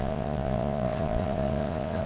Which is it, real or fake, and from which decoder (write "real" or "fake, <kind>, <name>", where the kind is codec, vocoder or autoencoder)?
fake, vocoder, Vocos